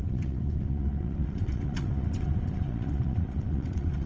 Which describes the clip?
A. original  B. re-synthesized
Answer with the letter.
B